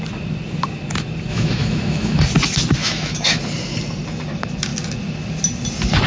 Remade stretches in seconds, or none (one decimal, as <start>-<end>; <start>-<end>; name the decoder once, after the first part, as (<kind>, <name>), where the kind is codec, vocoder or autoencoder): 1.3-2.2 (autoencoder, DAC-VAE); 2.8-3.4

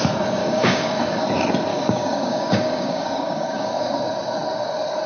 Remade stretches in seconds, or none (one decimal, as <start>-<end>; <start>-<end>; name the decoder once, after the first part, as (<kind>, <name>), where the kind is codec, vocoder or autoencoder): 0.4-1.2 (codec, DAC); 1.7-3.9

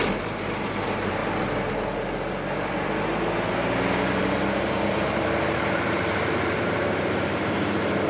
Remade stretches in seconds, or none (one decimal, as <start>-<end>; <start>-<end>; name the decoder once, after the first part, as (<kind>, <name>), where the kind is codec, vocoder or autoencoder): 0.0-1.2 (vocoder, BigVGAN v2); 4.2-8.1

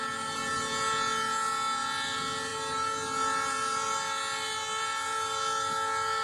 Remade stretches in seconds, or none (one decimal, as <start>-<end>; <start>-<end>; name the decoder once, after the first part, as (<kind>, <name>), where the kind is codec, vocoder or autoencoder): none

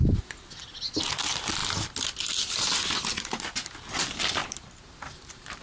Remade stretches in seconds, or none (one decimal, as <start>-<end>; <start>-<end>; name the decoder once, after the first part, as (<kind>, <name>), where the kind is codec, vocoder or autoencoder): 4.4-5.6 (vocoder, BigVGAN v2)

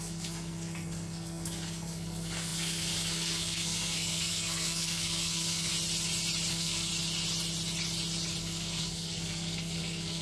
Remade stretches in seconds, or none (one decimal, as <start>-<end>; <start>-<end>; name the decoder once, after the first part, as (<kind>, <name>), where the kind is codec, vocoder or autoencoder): 0.0-5.7 (codec, SNAC); 6.5-6.9; 8.4-10.2

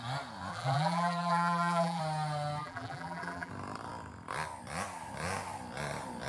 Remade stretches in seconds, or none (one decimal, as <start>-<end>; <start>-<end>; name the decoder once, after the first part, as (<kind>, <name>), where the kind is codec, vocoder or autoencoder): 0.5-2.0 (vocoder, BigVGAN v2); 2.6-3.5